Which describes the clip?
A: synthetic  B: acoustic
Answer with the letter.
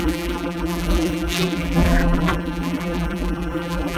A